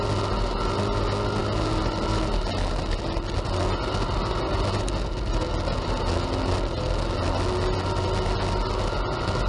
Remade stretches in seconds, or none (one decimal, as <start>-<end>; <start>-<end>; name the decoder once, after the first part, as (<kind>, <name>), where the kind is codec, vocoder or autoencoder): none